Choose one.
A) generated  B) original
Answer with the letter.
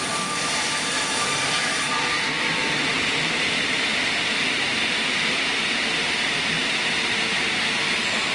A